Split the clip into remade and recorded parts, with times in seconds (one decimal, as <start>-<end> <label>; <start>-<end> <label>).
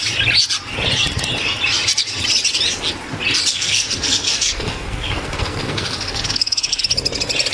0.0-3.5 recorded; 3.5-6.8 remade; 6.8-7.5 recorded